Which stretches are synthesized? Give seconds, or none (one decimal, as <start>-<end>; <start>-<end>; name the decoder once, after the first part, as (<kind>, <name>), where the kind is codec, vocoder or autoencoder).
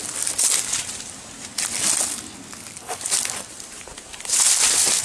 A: 0.7-1.5 (vocoder, BigVGAN v2); 3.5-5.0